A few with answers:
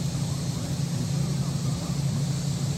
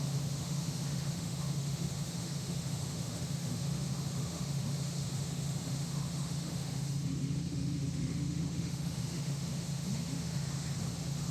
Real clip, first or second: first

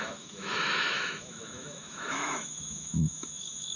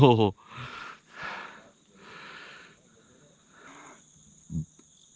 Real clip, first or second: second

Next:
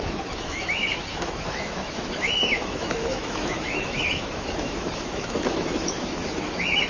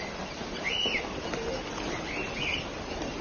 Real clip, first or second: second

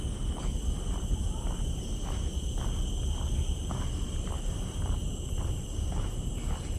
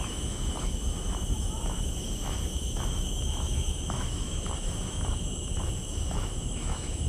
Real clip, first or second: first